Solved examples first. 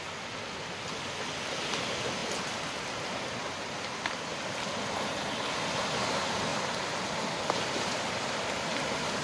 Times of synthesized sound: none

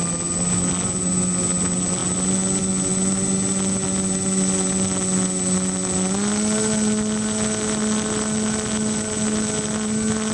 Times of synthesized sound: none

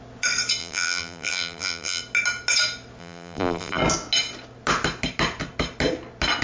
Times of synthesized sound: 0.6-2.0 (vocoder, BigVGAN v2); 3.0-3.8

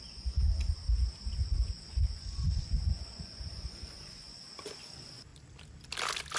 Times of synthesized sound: 0.0-0.8 (vocoder, Vocos); 1.3-5.3

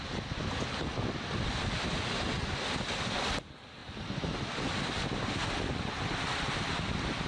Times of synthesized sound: none